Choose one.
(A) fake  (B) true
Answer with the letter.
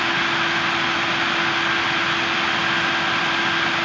B